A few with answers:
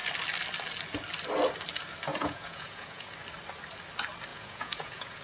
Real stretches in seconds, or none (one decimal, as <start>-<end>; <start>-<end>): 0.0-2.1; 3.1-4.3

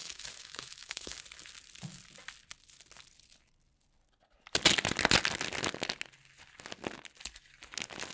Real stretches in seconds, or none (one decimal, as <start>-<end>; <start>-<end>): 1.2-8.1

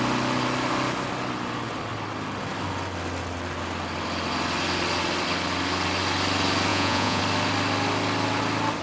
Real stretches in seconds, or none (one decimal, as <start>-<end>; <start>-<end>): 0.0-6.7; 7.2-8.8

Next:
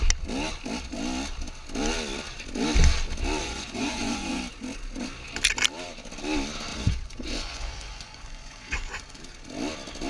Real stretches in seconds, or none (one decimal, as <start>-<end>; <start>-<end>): 0.0-3.4; 4.4-6.7; 9.2-10.1

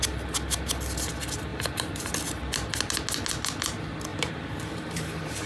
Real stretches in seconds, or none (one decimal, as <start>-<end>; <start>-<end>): 0.0-1.5; 2.1-4.1

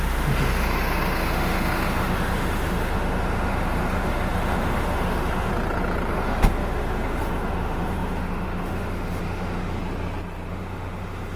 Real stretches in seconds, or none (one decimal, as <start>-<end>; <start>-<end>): 5.5-6.1; 9.8-10.5

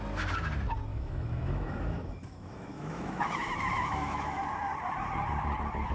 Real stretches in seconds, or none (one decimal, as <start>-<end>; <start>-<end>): 0.0-0.9; 4.4-5.9